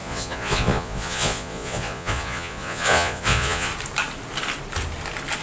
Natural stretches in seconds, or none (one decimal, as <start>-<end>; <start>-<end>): 3.7-5.4